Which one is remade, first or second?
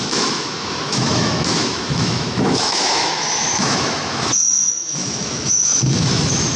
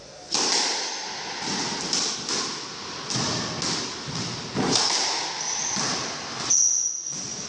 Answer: first